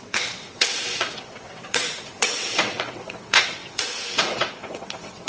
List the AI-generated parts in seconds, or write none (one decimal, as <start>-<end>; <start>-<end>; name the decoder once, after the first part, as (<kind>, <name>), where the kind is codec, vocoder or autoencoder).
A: 0.0-5.3 (vocoder, WaveNeXt)